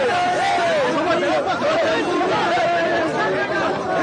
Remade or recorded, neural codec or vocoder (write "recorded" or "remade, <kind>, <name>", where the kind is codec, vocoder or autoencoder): recorded